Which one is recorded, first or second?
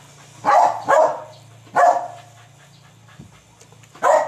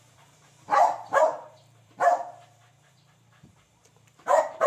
first